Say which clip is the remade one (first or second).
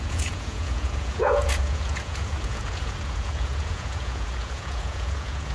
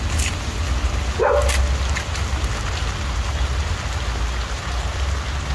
first